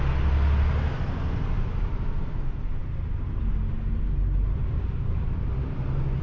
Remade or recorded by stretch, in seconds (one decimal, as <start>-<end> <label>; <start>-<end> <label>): 0.0-6.2 recorded